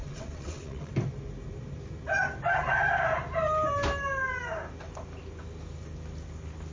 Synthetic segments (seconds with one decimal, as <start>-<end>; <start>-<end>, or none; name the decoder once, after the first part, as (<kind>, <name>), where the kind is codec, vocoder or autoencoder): 0.0-0.9 (vocoder, WaveNeXt)